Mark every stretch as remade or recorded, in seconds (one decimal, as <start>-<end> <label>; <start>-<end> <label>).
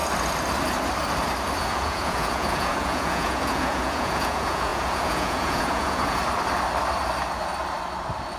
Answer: 0.0-1.6 recorded; 1.6-6.2 remade; 6.2-8.4 recorded